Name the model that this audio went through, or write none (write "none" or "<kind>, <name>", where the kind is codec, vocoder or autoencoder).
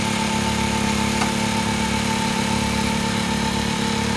none